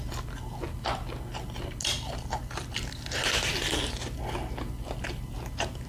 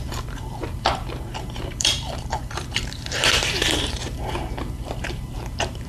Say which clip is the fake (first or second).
second